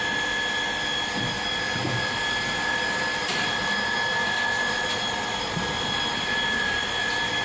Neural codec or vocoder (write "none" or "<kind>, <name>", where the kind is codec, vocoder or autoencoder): none